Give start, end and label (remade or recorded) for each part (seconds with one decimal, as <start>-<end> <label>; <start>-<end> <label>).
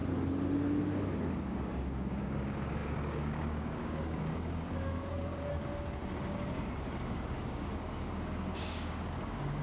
0.0-1.4 recorded; 1.4-9.6 remade